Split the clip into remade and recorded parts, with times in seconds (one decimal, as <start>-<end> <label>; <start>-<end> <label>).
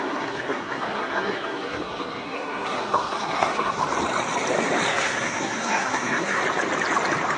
0.0-3.8 remade; 3.8-4.9 recorded; 4.9-6.4 remade; 6.4-7.4 recorded